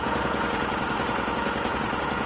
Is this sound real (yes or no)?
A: no